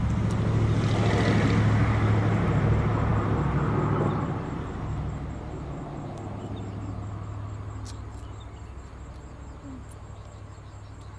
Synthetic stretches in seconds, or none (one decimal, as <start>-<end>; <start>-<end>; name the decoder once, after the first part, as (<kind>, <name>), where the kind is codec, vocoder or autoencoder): none